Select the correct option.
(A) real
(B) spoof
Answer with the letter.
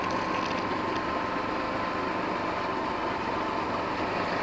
A